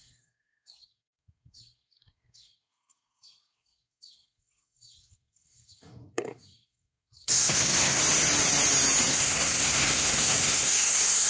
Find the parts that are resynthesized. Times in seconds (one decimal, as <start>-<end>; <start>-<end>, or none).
0.0-8.0; 9.1-11.3